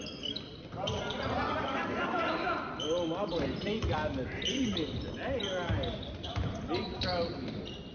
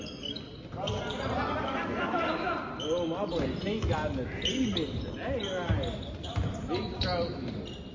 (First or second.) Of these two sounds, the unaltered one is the second